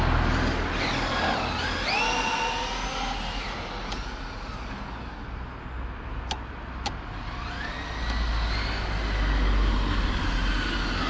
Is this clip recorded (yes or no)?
yes